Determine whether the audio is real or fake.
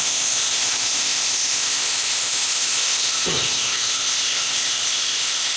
fake